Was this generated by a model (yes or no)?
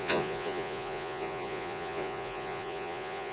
yes